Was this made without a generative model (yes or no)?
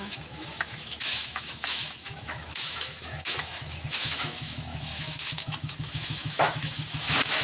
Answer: no